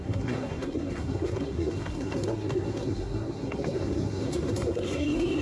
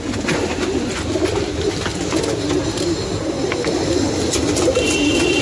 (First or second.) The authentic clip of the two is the second